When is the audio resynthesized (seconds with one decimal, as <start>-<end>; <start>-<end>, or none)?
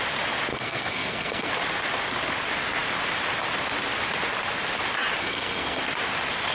0.5-1.5; 5.2-5.8